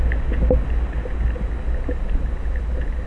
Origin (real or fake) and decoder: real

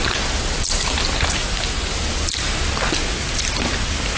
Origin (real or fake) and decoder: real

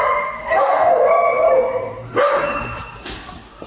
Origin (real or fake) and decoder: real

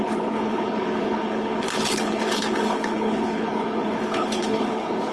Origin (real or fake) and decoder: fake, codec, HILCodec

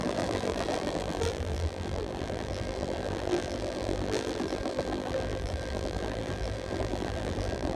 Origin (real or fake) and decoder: fake, vocoder, BigVGAN v2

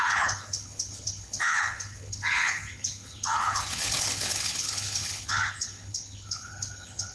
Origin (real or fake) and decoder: fake, codec, HILCodec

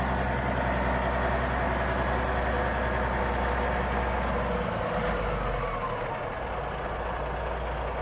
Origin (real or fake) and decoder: real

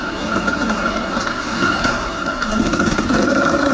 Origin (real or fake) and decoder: fake, codec, SNAC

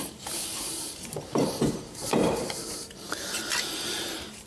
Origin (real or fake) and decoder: fake, vocoder, BigVGAN v2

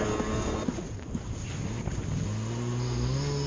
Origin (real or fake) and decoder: real